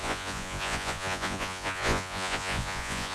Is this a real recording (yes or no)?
no